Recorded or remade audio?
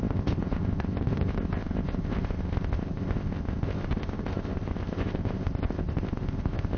remade